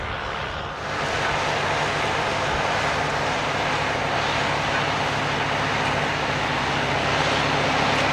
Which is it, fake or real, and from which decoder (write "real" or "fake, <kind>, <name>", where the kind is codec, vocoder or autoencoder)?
real